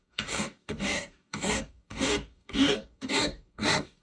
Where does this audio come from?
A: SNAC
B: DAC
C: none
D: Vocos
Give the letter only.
B